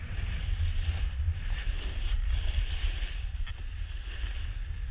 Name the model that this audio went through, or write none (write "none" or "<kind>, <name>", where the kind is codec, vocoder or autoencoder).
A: none